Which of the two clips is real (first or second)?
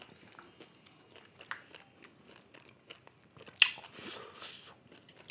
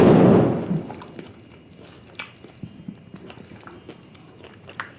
first